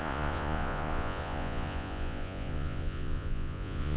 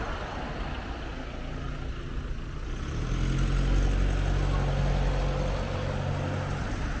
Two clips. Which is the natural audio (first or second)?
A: second